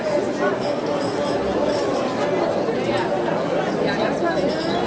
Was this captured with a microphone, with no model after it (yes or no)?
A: yes